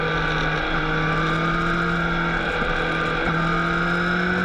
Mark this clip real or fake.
real